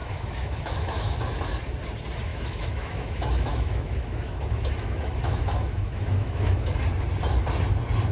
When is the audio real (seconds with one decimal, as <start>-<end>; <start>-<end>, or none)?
1.4-2.3; 6.8-8.1